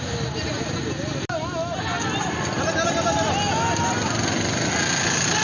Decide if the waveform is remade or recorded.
recorded